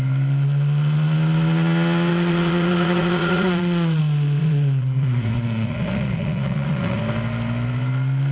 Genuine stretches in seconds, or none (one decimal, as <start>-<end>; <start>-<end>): 0.0-2.1; 4.0-4.4; 7.0-8.3